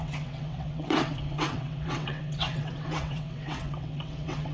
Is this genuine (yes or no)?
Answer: no